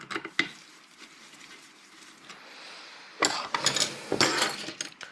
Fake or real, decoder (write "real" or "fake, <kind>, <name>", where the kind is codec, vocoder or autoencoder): real